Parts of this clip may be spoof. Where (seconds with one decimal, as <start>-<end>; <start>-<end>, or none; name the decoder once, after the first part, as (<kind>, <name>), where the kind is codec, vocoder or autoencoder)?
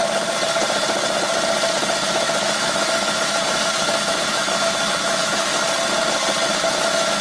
2.1-5.5 (autoencoder, DAC-VAE); 6.5-7.2